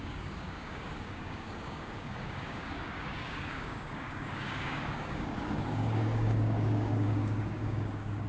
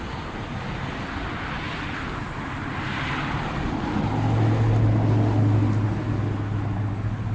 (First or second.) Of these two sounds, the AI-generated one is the first